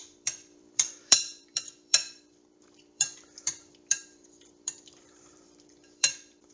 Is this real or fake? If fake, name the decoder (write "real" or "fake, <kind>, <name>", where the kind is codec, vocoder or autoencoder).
fake, vocoder, BigVGAN v2